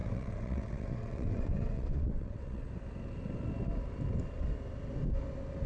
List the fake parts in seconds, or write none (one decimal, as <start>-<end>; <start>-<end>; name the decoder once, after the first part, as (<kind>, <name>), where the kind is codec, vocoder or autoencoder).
0.0-2.7 (vocoder, WaveNeXt)